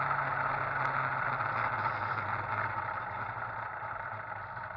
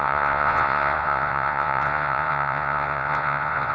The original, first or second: first